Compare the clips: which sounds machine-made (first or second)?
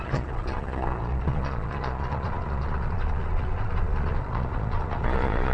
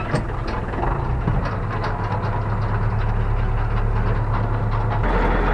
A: first